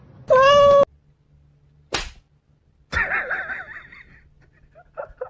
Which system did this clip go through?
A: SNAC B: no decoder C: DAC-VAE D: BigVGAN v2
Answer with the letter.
B